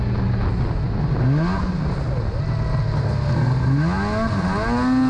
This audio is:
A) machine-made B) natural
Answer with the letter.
B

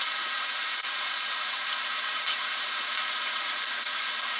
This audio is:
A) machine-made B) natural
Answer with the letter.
A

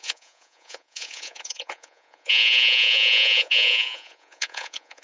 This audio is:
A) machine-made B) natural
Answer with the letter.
A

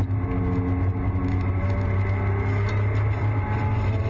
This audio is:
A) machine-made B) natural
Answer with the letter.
B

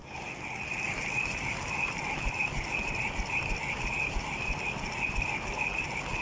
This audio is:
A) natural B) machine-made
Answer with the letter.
A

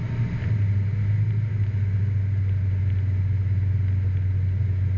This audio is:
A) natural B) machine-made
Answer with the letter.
A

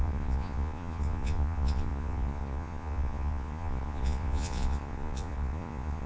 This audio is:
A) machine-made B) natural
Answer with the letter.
A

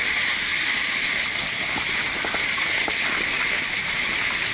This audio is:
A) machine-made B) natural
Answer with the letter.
B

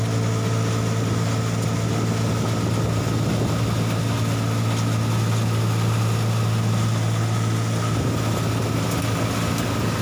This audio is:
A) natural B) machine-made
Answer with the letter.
A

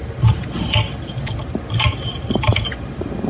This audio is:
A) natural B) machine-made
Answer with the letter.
A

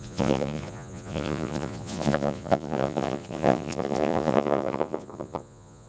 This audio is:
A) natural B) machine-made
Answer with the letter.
B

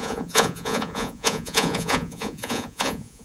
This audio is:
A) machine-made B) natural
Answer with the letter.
A